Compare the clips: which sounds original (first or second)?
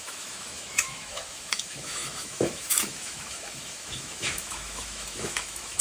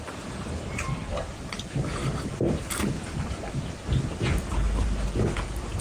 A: second